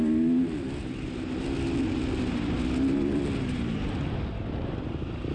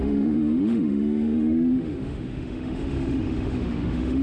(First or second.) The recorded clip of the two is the first